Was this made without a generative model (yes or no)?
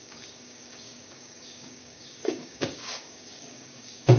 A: no